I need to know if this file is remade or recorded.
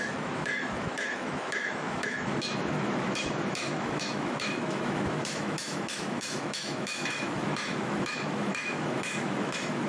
remade